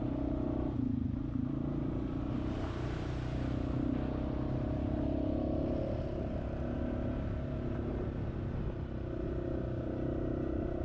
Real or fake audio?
real